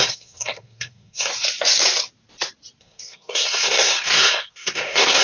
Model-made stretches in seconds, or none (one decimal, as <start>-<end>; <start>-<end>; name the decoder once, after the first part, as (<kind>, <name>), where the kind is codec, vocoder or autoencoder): 0.0-1.3 (codec, SNAC); 2.8-5.2